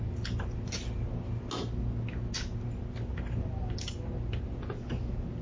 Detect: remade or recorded recorded